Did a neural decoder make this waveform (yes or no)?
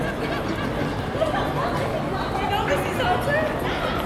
no